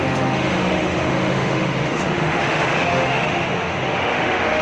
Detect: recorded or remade remade